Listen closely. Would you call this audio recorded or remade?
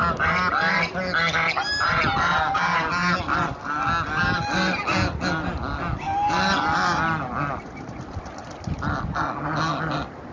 recorded